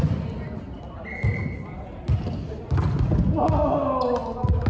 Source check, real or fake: real